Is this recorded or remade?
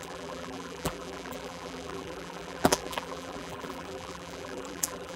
remade